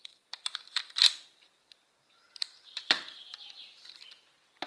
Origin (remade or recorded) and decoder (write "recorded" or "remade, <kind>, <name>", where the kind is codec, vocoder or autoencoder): remade, vocoder, BigVGAN v2